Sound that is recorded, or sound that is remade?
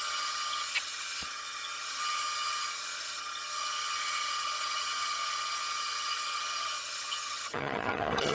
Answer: remade